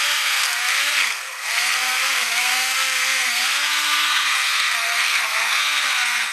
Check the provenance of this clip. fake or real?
fake